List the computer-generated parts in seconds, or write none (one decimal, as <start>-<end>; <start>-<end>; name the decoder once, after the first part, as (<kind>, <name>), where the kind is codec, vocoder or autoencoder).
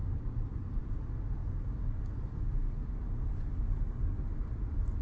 0.0-0.8 (vocoder, BigVGAN v2); 3.0-4.5